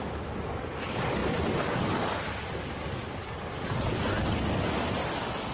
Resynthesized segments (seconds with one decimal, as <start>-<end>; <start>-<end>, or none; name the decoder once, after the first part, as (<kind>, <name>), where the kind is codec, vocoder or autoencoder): none